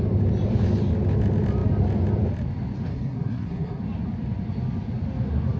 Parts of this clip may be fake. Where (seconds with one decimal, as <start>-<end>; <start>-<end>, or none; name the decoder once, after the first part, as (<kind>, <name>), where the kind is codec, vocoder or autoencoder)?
2.9-3.8 (codec, SNAC)